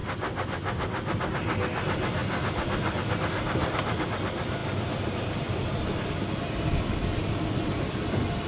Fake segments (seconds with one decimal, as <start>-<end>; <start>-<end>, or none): 4.6-5.3

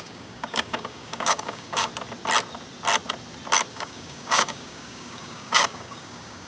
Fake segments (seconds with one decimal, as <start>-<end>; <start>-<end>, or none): 0.0-1.9; 3.7-6.5

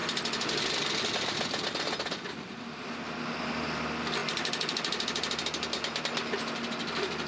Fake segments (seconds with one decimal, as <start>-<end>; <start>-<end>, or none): none

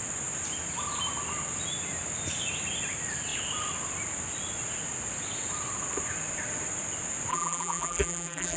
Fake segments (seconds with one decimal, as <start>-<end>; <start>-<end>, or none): 7.3-8.6

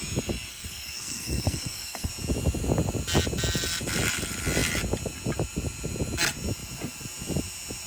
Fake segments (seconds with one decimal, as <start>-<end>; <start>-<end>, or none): 0.5-2.1

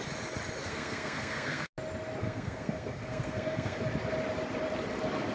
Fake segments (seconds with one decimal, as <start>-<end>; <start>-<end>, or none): 0.6-1.7; 2.2-3.8